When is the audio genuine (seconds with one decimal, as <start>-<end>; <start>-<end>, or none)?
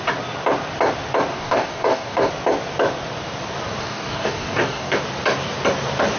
0.0-1.3; 2.3-3.8; 5.0-6.2